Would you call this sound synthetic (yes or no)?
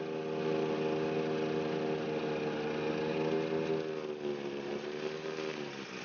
no